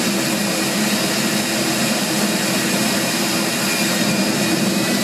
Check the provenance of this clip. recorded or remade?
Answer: recorded